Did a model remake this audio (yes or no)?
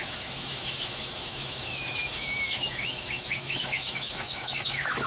yes